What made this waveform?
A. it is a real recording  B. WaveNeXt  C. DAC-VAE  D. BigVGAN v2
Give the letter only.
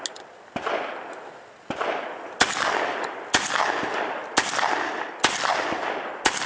A